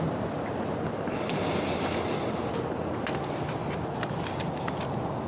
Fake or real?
real